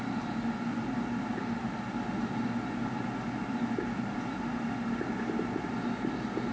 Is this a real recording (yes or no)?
yes